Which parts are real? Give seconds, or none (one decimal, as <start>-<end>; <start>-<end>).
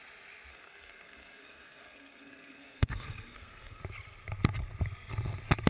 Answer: 0.0-0.5; 3.8-5.7